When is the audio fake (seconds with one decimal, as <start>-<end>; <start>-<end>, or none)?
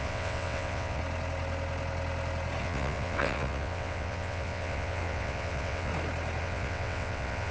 0.0-1.0; 2.6-5.9; 6.4-7.5